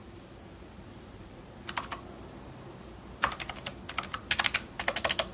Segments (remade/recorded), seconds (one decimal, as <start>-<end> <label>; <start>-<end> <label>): 0.0-5.3 recorded